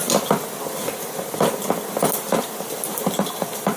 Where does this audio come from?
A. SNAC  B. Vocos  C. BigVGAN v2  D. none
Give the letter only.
D